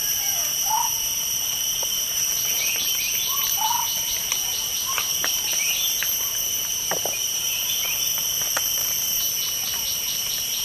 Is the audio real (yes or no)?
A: no